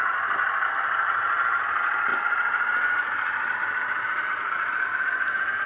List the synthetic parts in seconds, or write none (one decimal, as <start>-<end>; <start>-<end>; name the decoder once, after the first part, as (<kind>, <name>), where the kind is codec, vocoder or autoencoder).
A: none